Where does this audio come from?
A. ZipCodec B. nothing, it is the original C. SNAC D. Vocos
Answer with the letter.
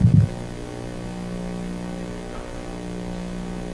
B